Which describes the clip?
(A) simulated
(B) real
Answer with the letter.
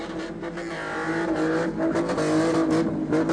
B